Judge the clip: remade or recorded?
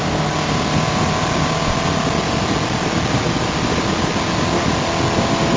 recorded